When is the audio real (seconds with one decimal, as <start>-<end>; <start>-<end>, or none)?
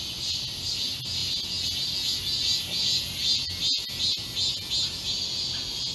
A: 0.0-5.9